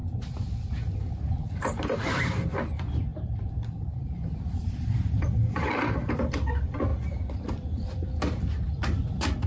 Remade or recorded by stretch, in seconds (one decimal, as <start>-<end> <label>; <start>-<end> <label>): 0.0-1.1 recorded; 1.1-9.5 remade